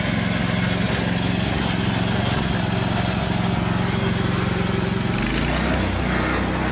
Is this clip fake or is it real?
real